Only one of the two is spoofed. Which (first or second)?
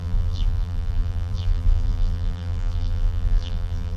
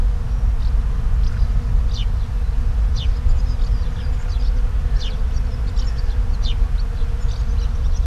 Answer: first